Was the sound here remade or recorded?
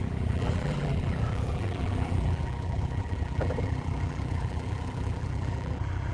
remade